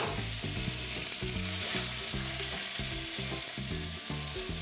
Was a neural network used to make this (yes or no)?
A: no